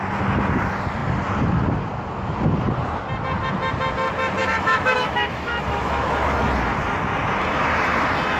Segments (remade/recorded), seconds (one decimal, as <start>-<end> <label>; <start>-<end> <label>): 0.0-4.4 recorded; 4.4-6.4 remade; 6.4-8.4 recorded